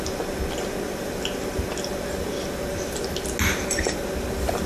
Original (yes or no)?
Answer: yes